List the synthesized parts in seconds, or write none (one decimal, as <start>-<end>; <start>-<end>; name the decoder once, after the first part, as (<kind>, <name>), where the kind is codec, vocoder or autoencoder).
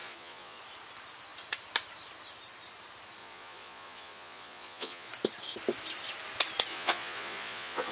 0.0-0.6 (vocoder, Vocos); 3.2-5.1; 6.7-7.9